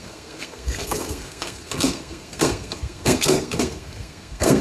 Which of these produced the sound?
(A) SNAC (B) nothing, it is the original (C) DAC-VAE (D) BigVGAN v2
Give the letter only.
A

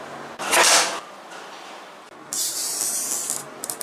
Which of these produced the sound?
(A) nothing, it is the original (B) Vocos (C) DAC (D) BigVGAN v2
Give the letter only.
A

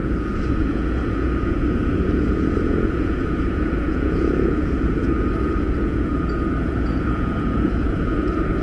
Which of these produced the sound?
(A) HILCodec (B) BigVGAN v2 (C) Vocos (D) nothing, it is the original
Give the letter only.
C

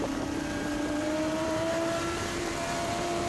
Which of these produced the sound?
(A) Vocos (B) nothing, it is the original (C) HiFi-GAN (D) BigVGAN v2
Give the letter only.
D